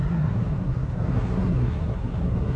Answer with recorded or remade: remade